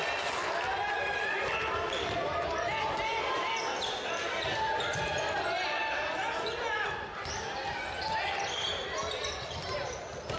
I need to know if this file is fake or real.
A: real